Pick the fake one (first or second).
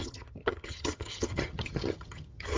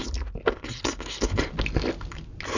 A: first